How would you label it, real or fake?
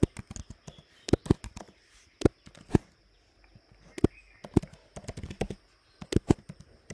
real